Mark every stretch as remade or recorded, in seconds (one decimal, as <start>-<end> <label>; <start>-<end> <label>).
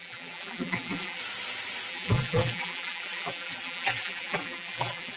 0.0-1.2 remade; 1.2-1.9 recorded; 1.9-5.2 remade